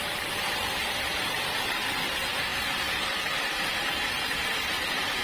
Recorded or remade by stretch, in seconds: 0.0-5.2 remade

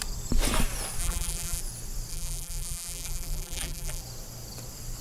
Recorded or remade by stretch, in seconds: 0.0-1.0 recorded; 1.0-1.6 remade; 1.6-2.1 recorded; 2.1-4.0 remade; 4.0-5.0 recorded